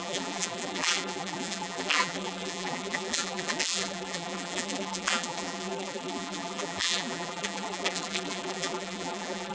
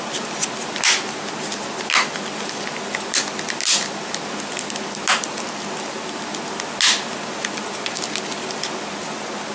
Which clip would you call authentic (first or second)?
second